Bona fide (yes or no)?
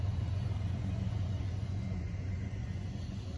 no